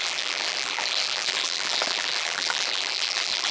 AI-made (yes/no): yes